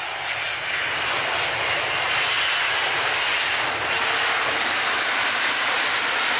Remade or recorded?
recorded